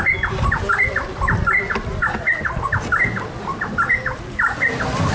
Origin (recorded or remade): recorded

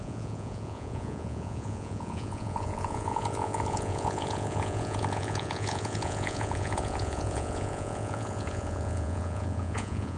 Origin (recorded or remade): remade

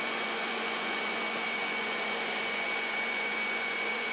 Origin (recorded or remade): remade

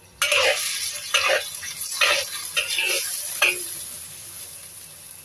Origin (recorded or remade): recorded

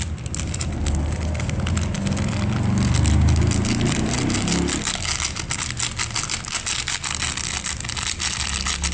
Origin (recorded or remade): recorded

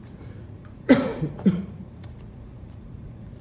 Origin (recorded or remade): remade